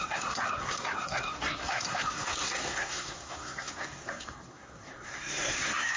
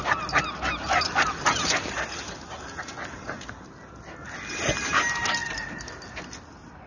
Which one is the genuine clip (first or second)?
second